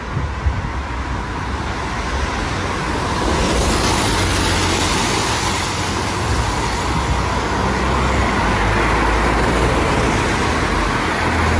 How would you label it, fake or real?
real